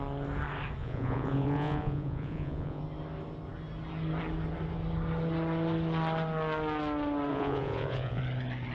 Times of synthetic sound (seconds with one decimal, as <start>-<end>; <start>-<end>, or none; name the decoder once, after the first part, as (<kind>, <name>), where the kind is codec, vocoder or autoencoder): 0.8-2.8 (vocoder, Vocos); 7.3-8.2